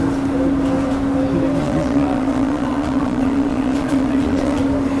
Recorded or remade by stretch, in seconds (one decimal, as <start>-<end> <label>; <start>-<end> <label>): 0.0-1.6 recorded; 1.6-4.6 remade; 4.6-5.0 recorded